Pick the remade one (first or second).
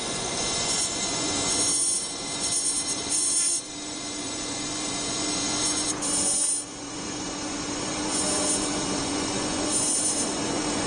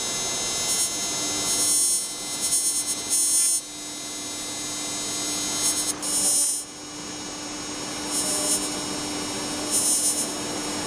first